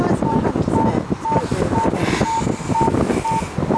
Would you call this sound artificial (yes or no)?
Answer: no